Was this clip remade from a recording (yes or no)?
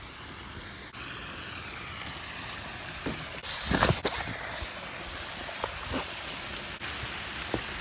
no